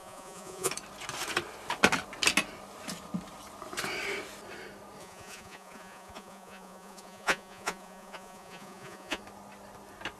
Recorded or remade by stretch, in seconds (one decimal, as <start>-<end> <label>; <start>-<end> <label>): 0.0-0.7 remade; 0.7-5.0 recorded; 5.0-9.2 remade; 9.2-10.2 recorded